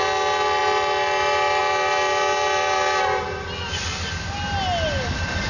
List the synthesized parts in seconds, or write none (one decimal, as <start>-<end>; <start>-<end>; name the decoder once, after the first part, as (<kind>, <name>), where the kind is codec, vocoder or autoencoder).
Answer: none